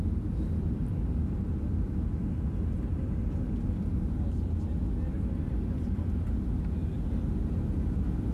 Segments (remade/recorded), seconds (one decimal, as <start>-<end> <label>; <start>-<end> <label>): 0.0-8.3 recorded